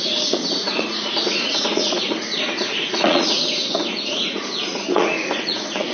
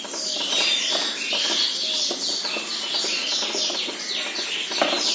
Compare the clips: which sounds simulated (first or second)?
first